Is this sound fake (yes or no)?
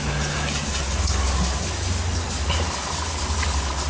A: no